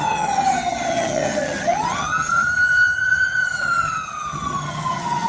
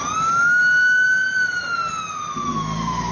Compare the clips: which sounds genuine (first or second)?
second